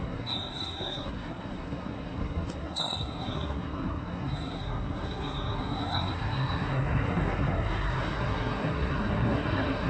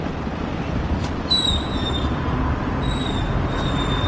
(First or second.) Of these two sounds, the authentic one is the second